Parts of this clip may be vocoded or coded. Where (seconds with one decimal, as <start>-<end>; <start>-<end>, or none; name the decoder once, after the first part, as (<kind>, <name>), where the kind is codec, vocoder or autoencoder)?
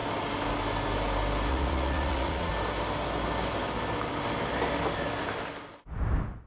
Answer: 1.5-2.5 (vocoder, Vocos)